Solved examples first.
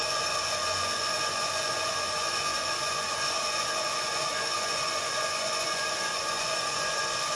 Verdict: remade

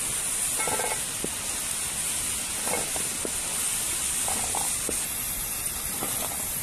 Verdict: recorded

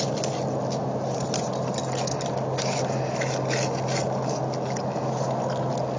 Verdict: recorded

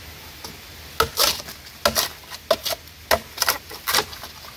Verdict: recorded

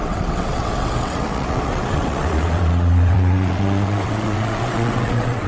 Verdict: remade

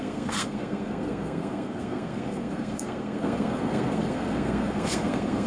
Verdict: remade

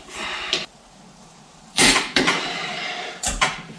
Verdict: remade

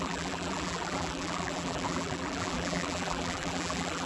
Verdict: remade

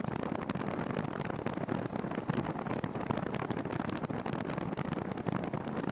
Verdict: recorded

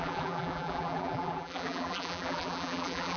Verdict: remade